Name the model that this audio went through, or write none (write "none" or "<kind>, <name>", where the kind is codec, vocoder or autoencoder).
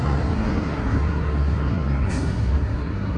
codec, SNAC